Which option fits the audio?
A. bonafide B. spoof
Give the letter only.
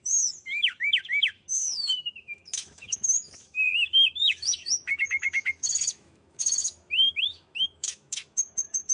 B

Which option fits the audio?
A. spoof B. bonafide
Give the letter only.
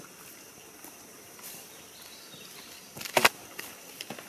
A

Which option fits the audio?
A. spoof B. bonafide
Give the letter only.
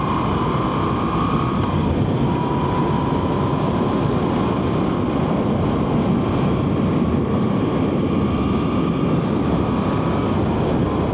B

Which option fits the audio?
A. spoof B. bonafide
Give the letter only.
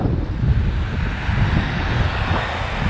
B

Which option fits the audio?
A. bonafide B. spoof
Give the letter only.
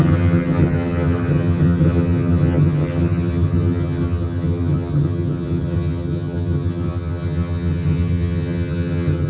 B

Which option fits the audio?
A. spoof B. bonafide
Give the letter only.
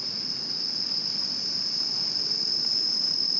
B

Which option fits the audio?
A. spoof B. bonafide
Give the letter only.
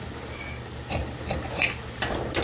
B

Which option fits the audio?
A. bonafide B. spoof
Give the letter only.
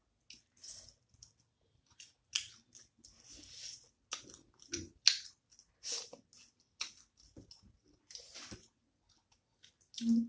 A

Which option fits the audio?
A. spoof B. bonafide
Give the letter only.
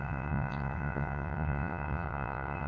A